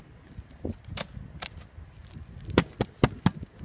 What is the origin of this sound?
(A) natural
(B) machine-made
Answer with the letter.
A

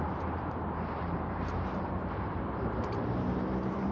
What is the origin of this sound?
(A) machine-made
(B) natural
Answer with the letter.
A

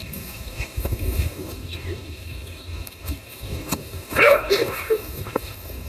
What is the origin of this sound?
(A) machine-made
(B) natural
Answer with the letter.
A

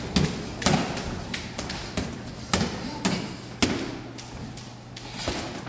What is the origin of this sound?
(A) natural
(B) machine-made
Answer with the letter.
A